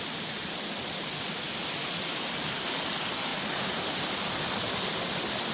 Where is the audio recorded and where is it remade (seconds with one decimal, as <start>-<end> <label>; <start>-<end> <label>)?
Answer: 0.0-5.5 recorded